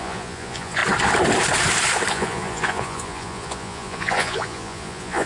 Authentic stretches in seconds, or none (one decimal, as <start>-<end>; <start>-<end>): 0.8-2.1